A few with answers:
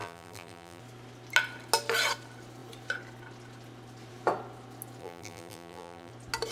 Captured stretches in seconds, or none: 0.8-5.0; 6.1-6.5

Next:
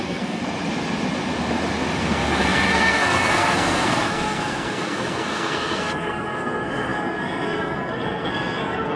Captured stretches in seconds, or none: 0.4-2.0

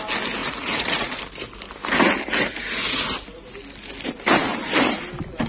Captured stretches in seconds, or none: 0.0-0.4; 1.2-5.5

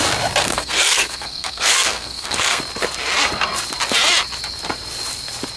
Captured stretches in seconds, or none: 0.0-0.4; 2.6-5.6

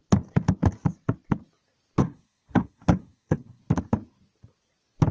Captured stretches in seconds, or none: 0.0-2.0; 3.6-5.1

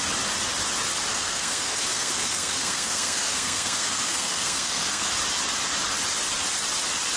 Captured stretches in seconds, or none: 0.0-1.1; 5.1-7.2